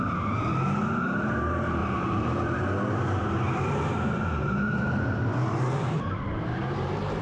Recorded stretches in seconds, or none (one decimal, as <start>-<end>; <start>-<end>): 0.0-1.8; 2.6-5.3